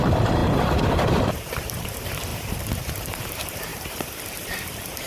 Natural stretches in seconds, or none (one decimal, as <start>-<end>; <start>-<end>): none